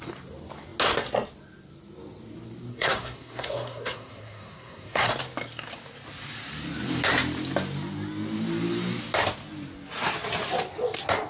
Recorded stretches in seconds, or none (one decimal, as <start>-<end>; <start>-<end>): 0.0-2.7; 5.1-11.3